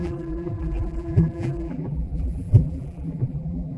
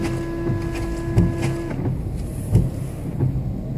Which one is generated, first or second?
first